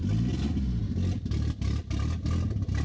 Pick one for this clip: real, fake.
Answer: real